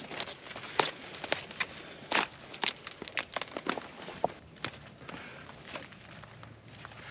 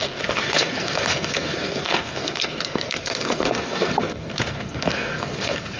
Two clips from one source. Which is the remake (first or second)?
second